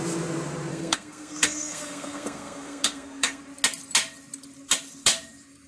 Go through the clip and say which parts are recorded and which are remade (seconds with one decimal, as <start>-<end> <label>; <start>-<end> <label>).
0.0-0.7 recorded; 0.7-3.4 remade; 3.4-5.7 recorded